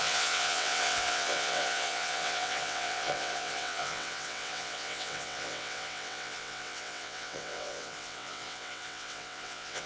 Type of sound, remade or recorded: remade